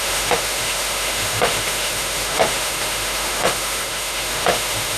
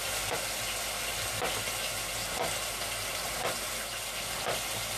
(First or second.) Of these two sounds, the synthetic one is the first